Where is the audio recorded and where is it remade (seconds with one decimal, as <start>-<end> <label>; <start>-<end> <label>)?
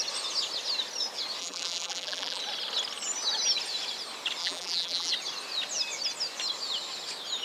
0.0-1.4 recorded; 1.4-2.4 remade; 2.4-4.4 recorded; 4.4-5.1 remade; 5.1-7.4 recorded